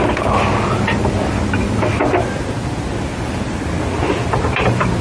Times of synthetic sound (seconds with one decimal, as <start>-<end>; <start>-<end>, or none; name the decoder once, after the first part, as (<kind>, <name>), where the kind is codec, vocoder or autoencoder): none